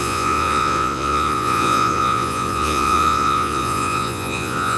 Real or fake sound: fake